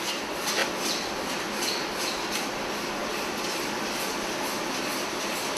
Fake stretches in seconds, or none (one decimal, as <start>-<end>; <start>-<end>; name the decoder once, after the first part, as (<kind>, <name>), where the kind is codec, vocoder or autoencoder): none